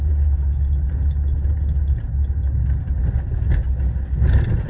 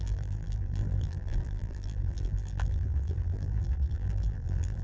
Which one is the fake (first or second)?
second